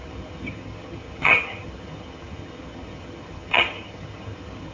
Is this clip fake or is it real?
fake